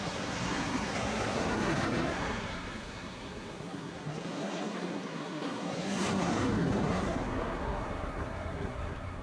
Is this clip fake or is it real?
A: fake